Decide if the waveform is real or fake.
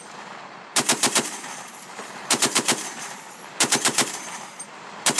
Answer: fake